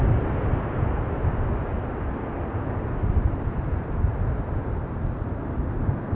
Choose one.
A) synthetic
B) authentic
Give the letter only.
B